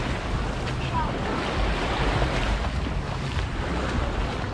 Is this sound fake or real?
real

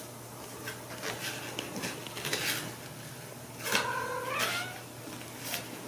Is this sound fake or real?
real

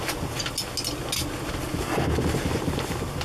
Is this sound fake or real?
real